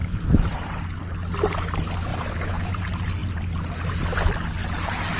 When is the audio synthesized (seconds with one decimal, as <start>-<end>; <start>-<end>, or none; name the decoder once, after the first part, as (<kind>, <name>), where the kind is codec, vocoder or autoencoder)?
0.0-0.8 (vocoder, BigVGAN v2); 2.1-2.8; 3.2-3.8; 4.6-5.2